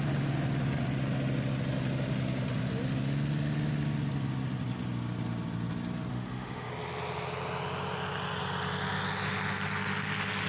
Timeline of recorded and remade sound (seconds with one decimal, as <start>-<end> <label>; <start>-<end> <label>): 0.0-6.1 recorded; 6.1-6.7 remade; 6.7-10.5 recorded